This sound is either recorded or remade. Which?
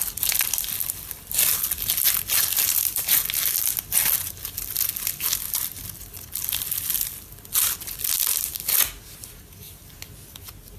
recorded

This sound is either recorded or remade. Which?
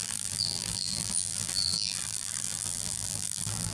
remade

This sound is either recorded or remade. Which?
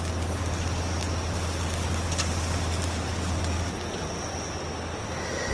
recorded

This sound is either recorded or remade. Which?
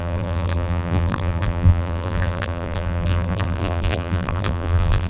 remade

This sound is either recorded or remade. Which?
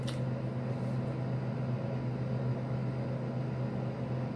recorded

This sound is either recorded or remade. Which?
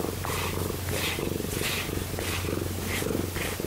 remade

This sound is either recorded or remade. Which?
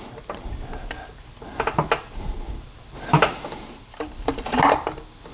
recorded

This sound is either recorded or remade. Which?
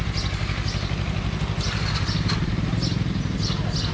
recorded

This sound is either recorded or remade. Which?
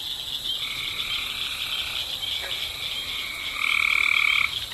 recorded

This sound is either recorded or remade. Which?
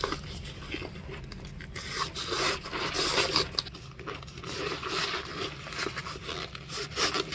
recorded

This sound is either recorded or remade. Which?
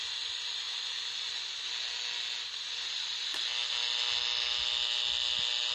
recorded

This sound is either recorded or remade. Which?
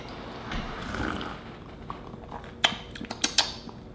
recorded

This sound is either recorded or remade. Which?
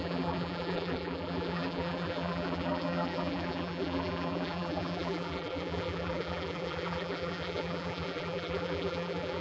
remade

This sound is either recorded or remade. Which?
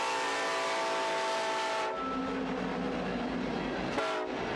recorded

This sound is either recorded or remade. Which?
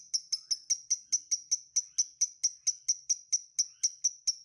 recorded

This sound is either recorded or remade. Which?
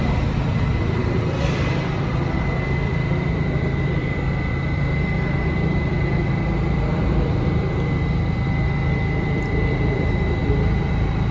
remade